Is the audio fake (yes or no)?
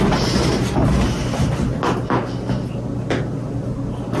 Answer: no